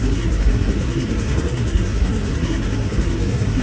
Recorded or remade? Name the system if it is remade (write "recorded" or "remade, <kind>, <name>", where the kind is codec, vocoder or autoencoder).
remade, codec, SNAC